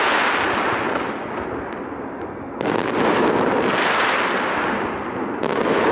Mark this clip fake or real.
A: real